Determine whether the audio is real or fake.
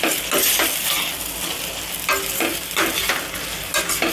real